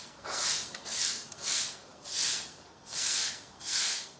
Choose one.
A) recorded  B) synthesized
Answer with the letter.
B